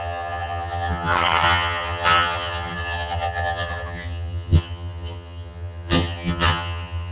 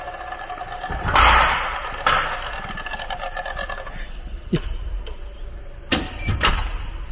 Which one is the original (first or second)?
second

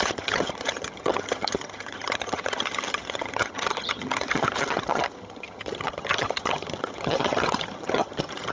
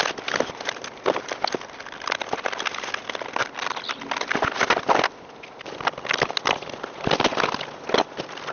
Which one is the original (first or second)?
second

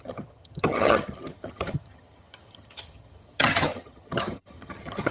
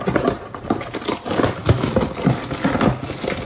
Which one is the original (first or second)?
second